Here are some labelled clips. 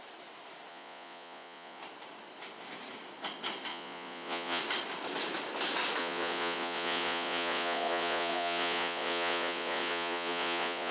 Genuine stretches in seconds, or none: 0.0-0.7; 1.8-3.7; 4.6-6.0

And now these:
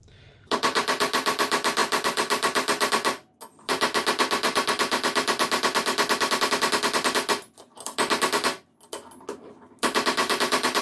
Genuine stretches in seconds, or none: 0.0-10.2

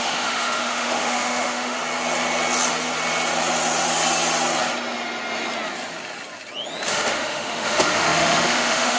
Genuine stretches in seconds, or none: 1.8-6.9

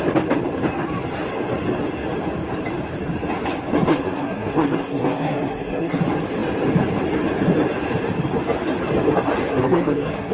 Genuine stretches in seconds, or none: 0.0-3.9; 6.0-9.5

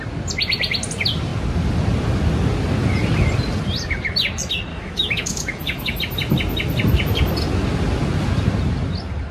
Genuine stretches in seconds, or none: 0.0-4.7; 6.0-9.3

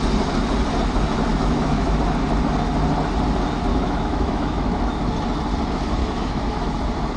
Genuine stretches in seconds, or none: 0.0-1.3; 2.0-3.7; 4.9-6.0; 6.8-7.2

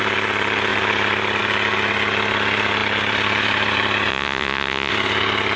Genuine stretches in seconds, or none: 0.0-4.1; 4.9-5.6

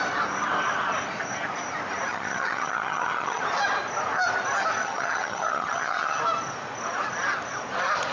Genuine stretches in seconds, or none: 0.0-2.1; 3.4-4.8; 6.2-8.1